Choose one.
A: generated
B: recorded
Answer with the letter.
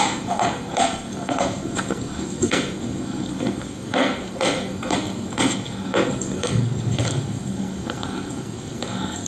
A